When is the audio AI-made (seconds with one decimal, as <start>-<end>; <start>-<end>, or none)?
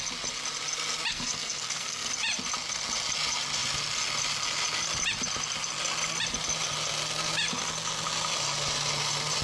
1.1-2.1